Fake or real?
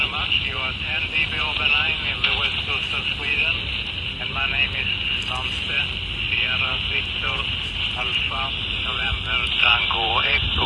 real